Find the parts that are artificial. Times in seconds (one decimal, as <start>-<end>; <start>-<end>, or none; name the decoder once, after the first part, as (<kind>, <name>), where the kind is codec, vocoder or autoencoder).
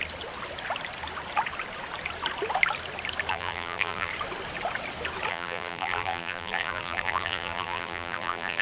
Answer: 3.3-4.1 (vocoder, BigVGAN v2); 5.3-8.6